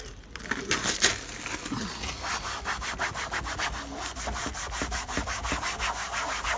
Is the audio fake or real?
real